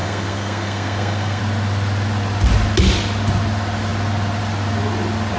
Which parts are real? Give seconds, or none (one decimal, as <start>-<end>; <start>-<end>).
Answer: 1.4-5.4